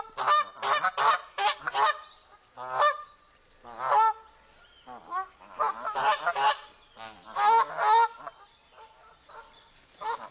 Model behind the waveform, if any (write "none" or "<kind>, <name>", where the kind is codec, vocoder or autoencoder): none